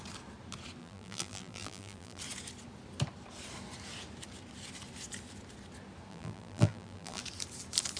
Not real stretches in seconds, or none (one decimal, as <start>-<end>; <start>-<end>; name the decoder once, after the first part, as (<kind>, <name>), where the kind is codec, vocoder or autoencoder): 0.8-2.2 (vocoder, BigVGAN v2); 6.1-7.2